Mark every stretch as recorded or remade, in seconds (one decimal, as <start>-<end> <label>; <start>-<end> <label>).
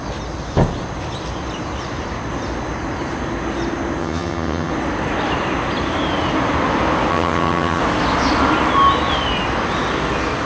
0.0-4.0 recorded; 4.0-4.7 remade; 4.7-7.1 recorded; 7.1-7.8 remade; 7.8-10.5 recorded